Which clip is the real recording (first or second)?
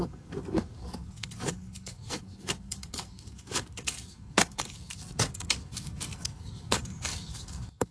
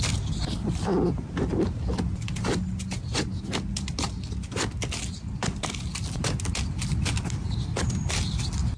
second